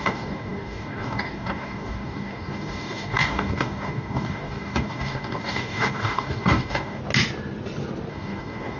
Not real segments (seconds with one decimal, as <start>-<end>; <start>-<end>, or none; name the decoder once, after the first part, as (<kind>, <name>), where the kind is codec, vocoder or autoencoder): 0.0-7.0 (codec, DAC); 8.1-8.8